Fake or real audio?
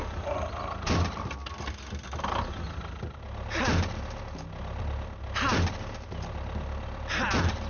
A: real